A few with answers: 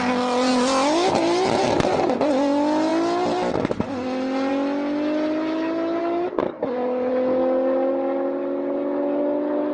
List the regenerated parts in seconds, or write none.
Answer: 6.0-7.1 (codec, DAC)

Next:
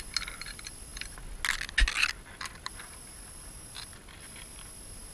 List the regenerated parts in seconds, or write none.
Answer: none

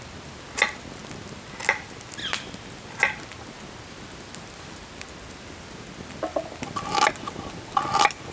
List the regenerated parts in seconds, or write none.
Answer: none

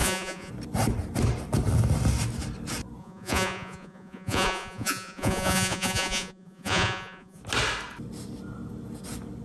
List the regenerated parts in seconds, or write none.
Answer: 0.0-0.5 (vocoder, Vocos); 3.0-7.4

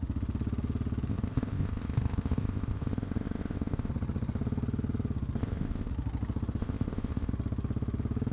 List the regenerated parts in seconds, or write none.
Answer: 1.1-3.9 (codec, ZipCodec); 5.4-5.9; 6.6-7.3